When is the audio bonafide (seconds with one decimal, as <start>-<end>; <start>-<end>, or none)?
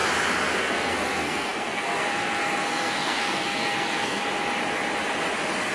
0.0-0.6; 4.2-5.7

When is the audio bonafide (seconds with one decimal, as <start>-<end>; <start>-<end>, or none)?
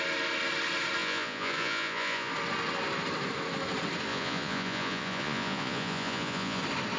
0.0-1.0; 2.3-4.1; 6.6-7.0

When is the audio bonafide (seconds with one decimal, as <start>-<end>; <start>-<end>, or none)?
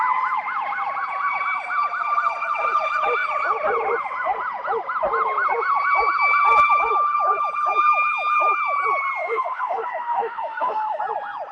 0.0-9.2; 11.0-11.5